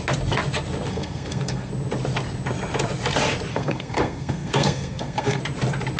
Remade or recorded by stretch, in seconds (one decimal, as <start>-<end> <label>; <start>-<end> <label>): 0.0-0.9 recorded; 0.9-1.7 remade; 1.7-3.5 recorded; 3.5-5.4 remade; 5.4-6.0 recorded